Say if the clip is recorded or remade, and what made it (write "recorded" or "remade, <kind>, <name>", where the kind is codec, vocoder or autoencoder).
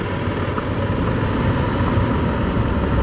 recorded